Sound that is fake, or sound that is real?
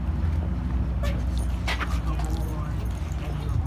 real